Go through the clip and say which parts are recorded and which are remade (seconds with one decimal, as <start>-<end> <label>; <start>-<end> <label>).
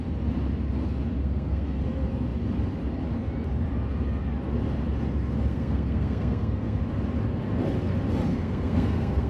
0.0-1.2 recorded; 1.2-1.8 remade; 1.8-5.5 recorded; 5.5-6.8 remade; 6.8-8.3 recorded; 8.3-9.3 remade